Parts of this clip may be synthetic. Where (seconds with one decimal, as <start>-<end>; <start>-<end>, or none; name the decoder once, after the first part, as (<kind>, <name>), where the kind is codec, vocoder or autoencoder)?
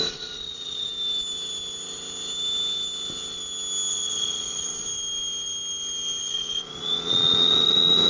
0.0-0.9 (vocoder, Vocos); 3.9-4.7; 6.2-8.1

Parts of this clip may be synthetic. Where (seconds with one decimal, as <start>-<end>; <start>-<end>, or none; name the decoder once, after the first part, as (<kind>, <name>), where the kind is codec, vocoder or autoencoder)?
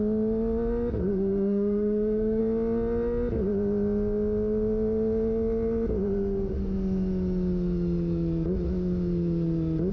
1.1-2.4 (autoencoder, DAC-VAE)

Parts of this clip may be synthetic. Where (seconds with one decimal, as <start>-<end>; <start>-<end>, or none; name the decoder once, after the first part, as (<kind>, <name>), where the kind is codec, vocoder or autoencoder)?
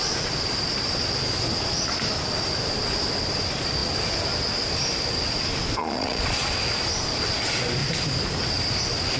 5.8-6.5 (vocoder, Vocos)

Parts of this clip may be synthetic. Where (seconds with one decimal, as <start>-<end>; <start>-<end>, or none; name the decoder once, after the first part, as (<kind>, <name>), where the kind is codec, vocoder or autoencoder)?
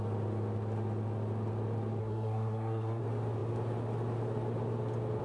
2.0-3.0 (codec, SNAC)